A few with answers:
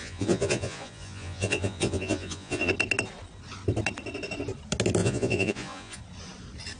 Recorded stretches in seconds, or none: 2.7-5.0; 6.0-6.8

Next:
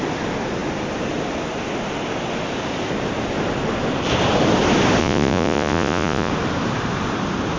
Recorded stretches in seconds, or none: 0.0-5.0; 6.3-7.6

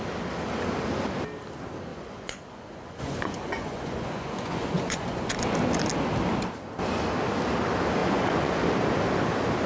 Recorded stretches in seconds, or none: 0.0-1.9; 5.4-8.0; 8.6-9.7

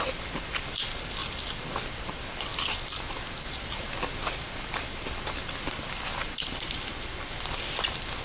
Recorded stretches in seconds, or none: 0.0-8.2

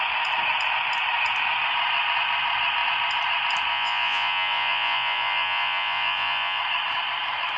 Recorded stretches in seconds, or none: 0.0-3.7; 6.6-7.6